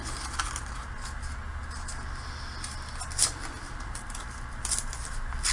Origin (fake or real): real